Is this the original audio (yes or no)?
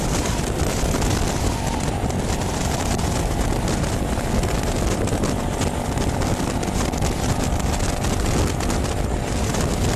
yes